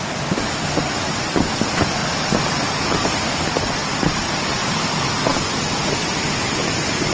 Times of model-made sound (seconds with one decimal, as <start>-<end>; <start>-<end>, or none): none